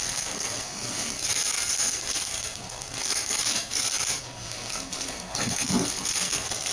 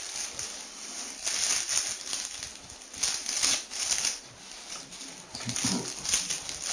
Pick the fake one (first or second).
first